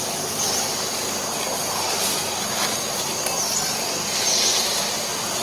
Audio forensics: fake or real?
real